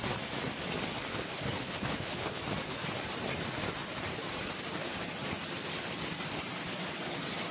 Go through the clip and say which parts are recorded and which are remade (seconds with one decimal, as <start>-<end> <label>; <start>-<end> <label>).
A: 0.0-1.1 recorded; 1.1-2.4 remade; 2.4-7.5 recorded